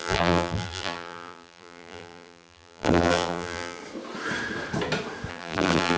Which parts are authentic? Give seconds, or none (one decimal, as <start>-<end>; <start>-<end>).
3.8-5.3